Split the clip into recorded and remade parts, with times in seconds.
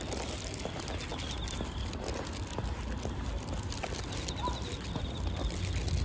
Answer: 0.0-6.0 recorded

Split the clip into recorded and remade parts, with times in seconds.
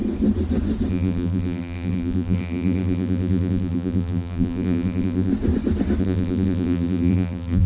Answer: 0.0-0.9 recorded; 0.9-5.3 remade; 5.3-6.0 recorded; 6.0-7.7 remade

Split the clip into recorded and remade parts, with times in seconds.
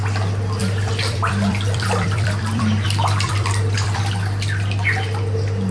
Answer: 0.0-0.6 recorded; 0.6-4.0 remade; 4.0-5.7 recorded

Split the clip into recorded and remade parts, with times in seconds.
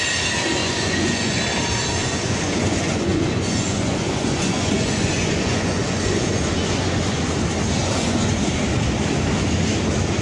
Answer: 0.0-0.6 recorded; 0.6-1.4 remade; 1.4-2.0 recorded; 2.0-7.3 remade; 7.3-7.8 recorded; 7.8-8.4 remade; 8.4-10.2 recorded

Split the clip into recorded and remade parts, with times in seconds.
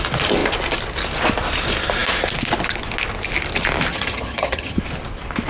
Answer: 0.0-3.9 recorded; 3.9-4.8 remade; 4.8-5.5 recorded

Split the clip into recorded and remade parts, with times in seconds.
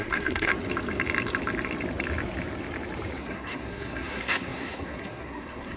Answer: 0.0-0.5 remade; 0.5-3.2 recorded; 3.2-5.8 remade